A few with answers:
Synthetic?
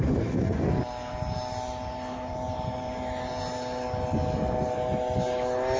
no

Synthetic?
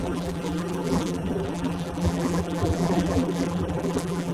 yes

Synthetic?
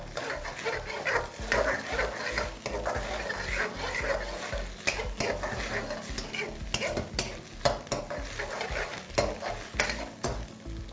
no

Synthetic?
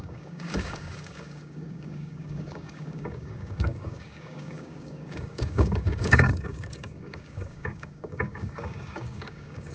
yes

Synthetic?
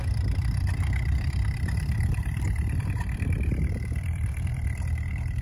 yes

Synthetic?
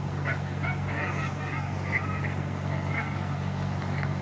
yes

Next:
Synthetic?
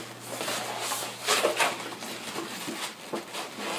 no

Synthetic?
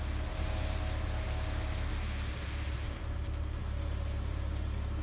no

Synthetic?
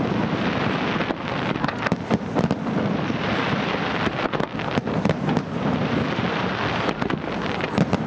yes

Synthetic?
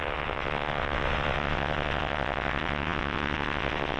yes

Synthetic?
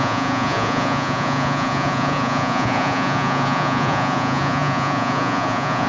yes